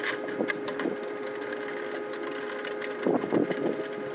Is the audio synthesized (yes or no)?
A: no